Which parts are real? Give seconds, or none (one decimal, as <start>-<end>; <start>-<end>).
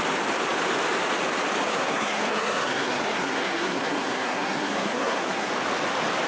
0.0-1.7; 5.5-6.3